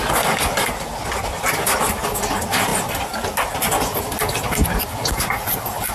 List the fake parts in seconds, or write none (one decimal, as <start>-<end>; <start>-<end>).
1.3-1.9; 2.7-4.0